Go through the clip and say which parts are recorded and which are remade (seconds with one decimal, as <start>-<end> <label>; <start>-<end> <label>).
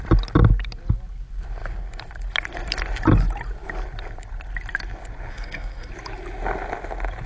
0.0-5.3 recorded; 5.3-5.9 remade; 5.9-7.3 recorded